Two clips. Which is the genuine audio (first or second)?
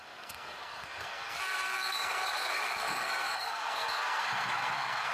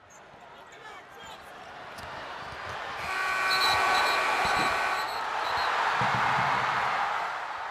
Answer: second